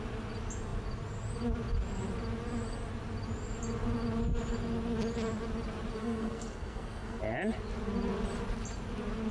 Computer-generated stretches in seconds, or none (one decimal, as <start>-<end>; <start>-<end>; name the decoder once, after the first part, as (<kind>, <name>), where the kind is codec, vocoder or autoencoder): 6.0-7.2 (codec, SNAC)